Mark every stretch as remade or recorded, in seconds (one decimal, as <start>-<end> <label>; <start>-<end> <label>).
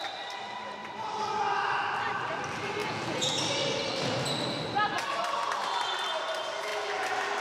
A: 0.0-2.8 recorded; 2.8-3.4 remade; 3.4-7.4 recorded